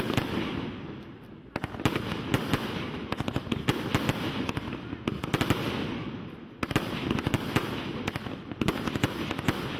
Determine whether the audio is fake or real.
real